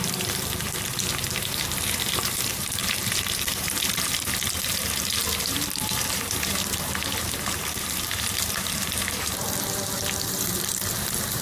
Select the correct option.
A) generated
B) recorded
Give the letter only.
A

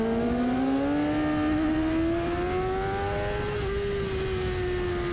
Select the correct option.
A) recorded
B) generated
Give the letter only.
A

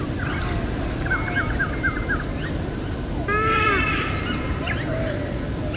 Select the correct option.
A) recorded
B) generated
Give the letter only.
B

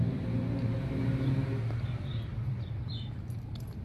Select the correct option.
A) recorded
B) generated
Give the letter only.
A